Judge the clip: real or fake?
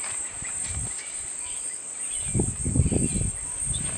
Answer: real